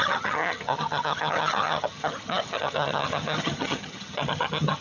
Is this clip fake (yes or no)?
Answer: yes